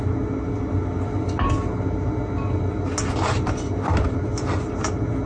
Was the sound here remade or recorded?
recorded